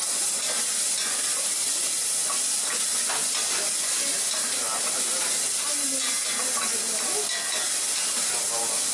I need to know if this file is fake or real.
fake